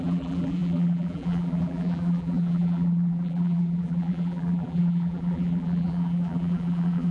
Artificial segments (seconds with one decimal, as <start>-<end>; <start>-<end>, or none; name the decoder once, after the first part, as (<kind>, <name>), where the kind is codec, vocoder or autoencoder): 0.0-7.1 (vocoder, BigVGAN v2)